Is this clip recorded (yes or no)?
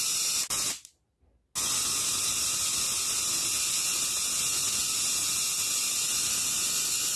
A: yes